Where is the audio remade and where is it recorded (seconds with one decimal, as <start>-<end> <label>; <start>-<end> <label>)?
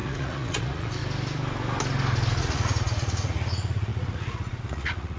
0.0-1.0 remade; 1.0-2.4 recorded; 2.4-5.2 remade